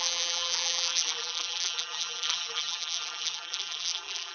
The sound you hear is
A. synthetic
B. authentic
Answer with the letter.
A